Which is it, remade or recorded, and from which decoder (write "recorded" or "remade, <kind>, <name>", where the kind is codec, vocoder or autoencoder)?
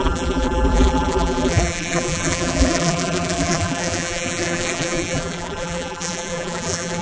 remade, vocoder, BigVGAN v2